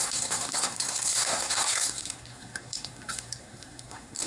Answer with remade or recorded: remade